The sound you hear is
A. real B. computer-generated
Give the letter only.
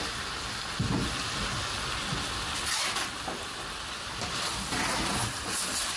A